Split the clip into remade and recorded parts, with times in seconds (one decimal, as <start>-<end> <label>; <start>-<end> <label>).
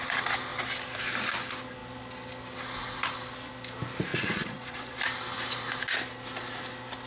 0.0-4.1 recorded; 4.1-5.0 remade; 5.0-7.1 recorded